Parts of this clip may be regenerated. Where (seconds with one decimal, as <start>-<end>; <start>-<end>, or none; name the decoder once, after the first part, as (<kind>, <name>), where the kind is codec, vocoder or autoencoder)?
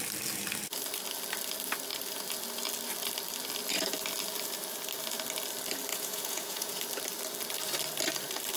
5.9-6.8 (vocoder, Vocos)